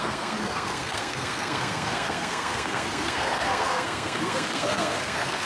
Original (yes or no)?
no